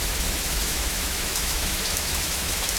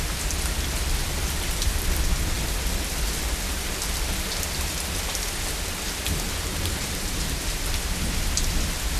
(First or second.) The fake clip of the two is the first